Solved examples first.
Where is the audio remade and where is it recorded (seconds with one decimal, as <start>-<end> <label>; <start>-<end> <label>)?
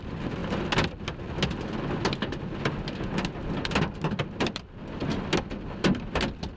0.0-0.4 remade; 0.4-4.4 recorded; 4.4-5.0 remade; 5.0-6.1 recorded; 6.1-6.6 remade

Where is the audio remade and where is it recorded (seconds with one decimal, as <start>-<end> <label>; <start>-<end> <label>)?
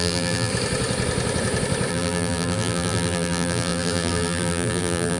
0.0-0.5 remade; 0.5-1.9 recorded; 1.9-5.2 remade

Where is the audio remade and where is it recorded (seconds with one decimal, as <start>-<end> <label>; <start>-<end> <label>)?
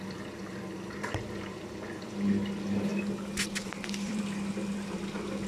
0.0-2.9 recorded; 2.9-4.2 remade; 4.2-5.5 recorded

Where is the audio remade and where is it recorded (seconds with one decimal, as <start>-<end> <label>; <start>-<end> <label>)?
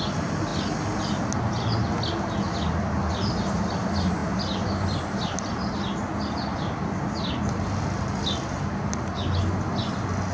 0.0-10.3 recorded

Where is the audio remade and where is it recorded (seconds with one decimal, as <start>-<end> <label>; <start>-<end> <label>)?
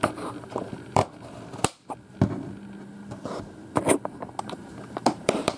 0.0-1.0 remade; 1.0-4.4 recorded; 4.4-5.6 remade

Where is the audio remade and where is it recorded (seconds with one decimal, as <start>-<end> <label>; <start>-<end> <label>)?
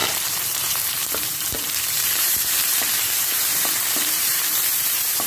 0.0-5.3 remade